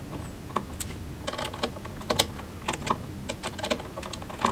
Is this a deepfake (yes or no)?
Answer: no